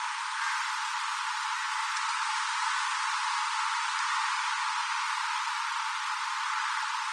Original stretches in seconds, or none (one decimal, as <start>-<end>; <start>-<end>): 0.0-7.1